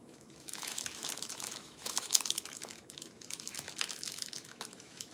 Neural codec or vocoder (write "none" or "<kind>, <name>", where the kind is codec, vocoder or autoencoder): autoencoder, DAC-VAE